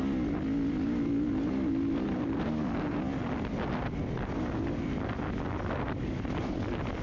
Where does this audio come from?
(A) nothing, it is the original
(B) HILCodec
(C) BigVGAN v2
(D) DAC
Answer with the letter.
A